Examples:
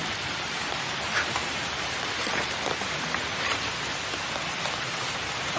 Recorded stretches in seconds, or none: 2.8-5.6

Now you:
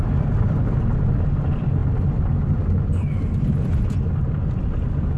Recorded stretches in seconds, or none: 0.0-5.2

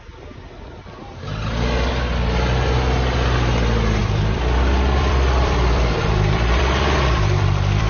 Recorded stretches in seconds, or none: 0.0-4.0

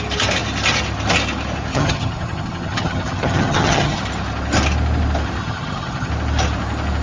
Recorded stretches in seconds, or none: 0.0-1.7; 4.0-5.4; 6.1-7.0